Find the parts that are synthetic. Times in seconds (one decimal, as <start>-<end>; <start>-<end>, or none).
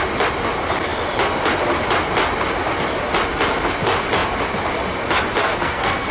5.4-6.1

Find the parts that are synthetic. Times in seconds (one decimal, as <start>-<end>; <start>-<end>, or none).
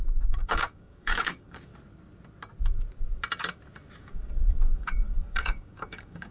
0.0-1.7; 4.0-6.3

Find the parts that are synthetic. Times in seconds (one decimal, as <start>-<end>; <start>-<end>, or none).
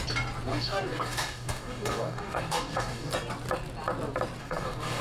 0.5-3.1; 4.4-5.0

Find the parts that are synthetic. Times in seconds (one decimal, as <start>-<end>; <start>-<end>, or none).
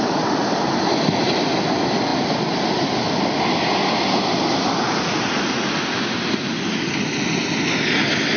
none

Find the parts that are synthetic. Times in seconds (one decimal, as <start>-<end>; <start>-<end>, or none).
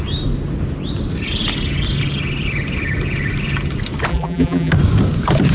4.1-4.7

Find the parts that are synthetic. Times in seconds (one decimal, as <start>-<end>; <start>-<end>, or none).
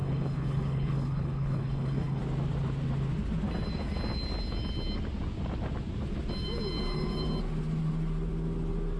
0.0-2.2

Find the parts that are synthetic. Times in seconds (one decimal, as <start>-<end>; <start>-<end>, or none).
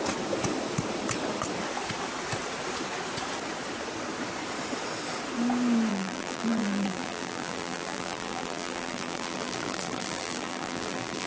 5.9-11.3